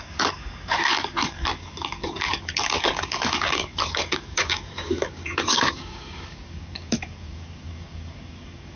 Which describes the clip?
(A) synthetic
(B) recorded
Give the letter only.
A